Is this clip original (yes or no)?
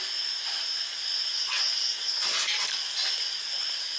yes